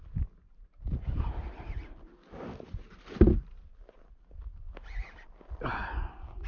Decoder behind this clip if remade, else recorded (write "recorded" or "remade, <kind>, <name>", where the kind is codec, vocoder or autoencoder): recorded